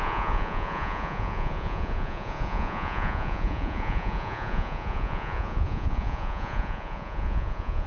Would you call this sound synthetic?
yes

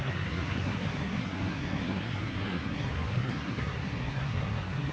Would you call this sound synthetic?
yes